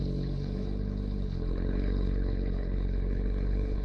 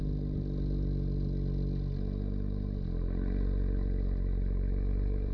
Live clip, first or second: second